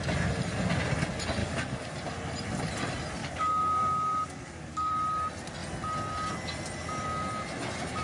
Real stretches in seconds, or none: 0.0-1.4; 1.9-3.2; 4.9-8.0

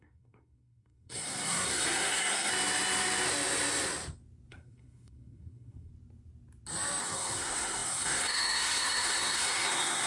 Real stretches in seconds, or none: 2.5-4.5; 5.9-7.0

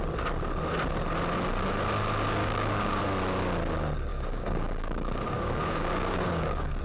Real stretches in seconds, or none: 0.0-2.4; 3.0-4.1

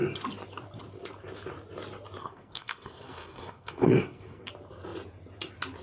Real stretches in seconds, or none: 0.0-2.2; 4.5-5.8

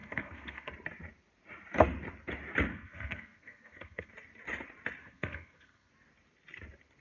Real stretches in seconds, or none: 0.7-2.7; 4.1-5.0; 5.9-7.0

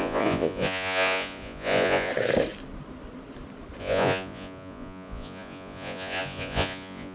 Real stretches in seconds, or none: 2.1-3.8